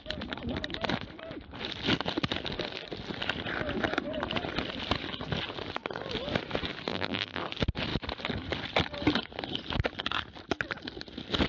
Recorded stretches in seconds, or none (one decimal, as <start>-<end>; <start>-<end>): 0.0-6.9; 7.4-11.5

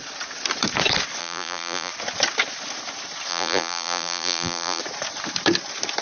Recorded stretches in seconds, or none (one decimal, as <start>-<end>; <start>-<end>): 0.0-1.2; 1.9-3.3; 4.8-6.0

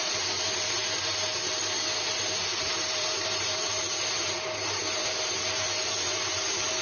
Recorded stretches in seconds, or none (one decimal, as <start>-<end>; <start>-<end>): 1.3-2.0

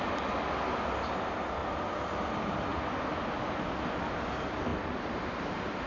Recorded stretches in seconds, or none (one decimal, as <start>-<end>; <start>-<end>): 0.0-1.6; 2.2-4.7

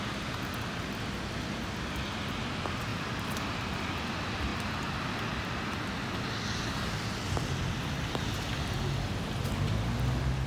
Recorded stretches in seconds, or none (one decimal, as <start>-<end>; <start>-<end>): 0.0-2.9; 3.8-10.5